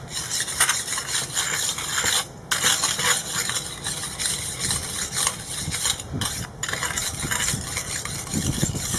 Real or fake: real